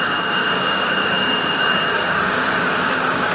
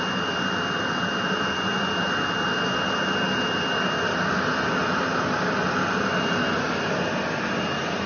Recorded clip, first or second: second